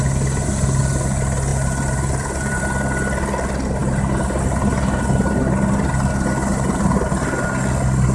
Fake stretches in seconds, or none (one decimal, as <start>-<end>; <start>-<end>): 1.5-2.6; 6.5-7.0